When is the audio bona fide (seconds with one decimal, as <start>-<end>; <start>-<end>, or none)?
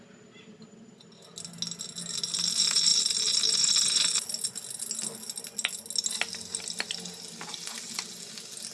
0.0-8.7